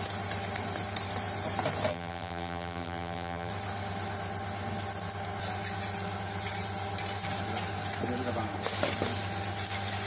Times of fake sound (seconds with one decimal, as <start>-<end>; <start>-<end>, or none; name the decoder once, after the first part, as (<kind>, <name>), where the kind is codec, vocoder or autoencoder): 1.9-3.5 (vocoder, BigVGAN v2)

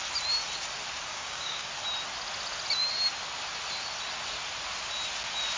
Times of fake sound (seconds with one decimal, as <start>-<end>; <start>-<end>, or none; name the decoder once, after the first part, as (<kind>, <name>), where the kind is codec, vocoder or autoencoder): 1.1-1.7 (codec, DAC)